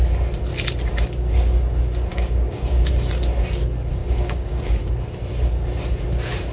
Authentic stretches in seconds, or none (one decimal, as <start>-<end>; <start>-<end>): 0.0-2.1; 2.9-4.0; 4.9-6.5